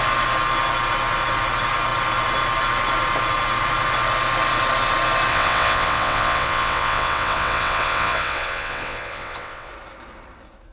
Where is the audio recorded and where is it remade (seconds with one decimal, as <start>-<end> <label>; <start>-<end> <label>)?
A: 0.0-5.3 recorded; 5.3-9.7 remade; 9.7-10.7 recorded

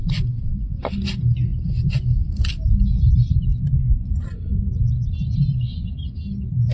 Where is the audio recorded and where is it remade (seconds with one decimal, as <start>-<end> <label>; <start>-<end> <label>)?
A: 0.0-0.5 remade; 0.5-6.7 recorded